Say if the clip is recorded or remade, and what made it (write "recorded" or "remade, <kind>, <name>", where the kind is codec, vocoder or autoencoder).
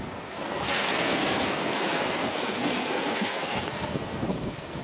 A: remade, codec, SNAC